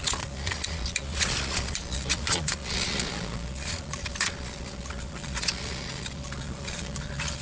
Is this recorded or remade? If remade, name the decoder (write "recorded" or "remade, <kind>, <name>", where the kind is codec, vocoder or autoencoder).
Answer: remade, vocoder, Vocos